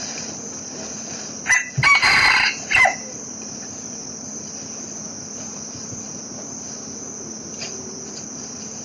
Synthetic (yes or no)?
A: yes